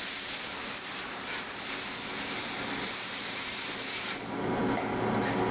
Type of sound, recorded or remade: recorded